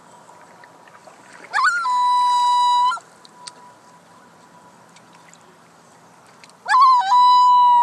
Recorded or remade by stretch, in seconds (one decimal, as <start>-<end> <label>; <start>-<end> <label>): 0.0-7.8 recorded